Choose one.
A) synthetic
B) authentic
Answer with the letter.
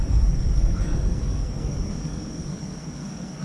A